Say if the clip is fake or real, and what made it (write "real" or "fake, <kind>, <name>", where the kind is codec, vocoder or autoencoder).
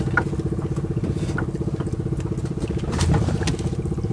real